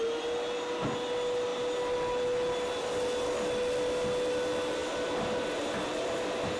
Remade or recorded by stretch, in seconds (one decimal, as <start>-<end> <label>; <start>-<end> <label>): 0.0-6.6 recorded